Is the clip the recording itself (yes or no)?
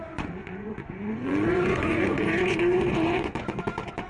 no